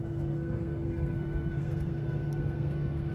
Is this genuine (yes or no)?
no